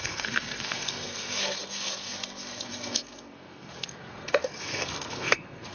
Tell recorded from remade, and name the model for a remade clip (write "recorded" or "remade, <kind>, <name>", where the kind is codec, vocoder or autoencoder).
remade, codec, SNAC